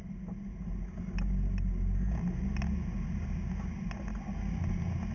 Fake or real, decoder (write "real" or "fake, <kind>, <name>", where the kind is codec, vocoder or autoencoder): real